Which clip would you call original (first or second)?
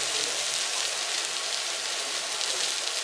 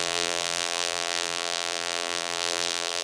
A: first